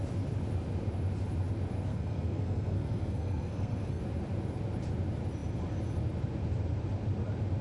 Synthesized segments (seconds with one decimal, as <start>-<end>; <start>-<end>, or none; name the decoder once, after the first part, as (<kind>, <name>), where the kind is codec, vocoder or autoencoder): 1.9-4.0 (codec, SNAC)